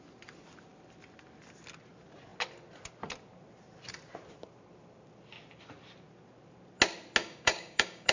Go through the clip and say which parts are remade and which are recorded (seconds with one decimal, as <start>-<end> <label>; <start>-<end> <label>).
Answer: 0.0-7.2 recorded; 7.2-8.1 remade